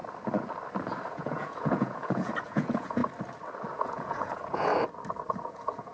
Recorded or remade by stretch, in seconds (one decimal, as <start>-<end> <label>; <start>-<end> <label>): 0.0-1.1 recorded; 1.1-3.0 remade; 3.0-3.7 recorded; 3.7-4.7 remade; 4.7-5.4 recorded; 5.4-5.9 remade